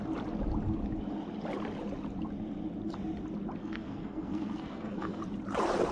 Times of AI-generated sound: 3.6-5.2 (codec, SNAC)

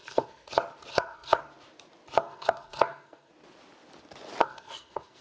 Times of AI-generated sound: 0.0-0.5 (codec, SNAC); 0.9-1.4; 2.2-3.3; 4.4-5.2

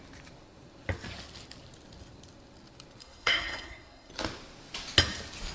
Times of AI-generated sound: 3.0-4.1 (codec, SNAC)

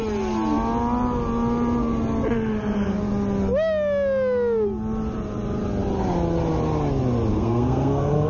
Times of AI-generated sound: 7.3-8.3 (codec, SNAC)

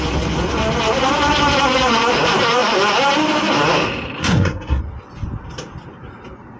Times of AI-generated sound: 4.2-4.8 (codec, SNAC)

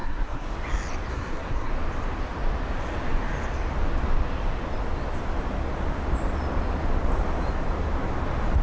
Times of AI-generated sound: 0.0-0.5 (codec, SNAC); 1.1-1.7

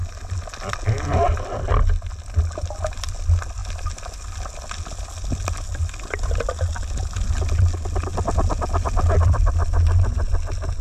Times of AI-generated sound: none